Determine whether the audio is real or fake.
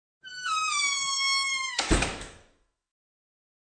fake